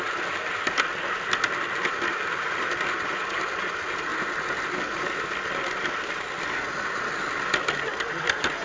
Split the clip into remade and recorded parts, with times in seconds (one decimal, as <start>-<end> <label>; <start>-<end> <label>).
0.0-8.6 recorded